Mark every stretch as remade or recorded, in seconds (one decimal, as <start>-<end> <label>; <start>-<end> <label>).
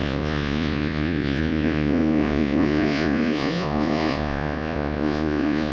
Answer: 0.0-5.7 remade